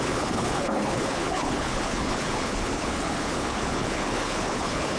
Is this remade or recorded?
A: remade